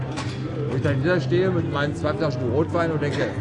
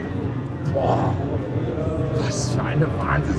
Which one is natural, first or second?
first